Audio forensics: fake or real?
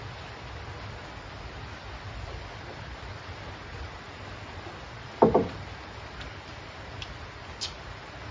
real